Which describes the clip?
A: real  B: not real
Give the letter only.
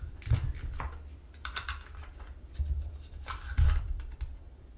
B